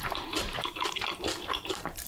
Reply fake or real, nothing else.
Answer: fake